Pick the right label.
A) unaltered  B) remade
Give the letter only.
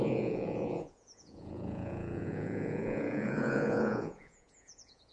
B